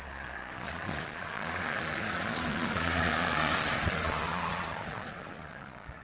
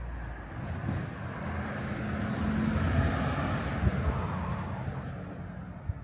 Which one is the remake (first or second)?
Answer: first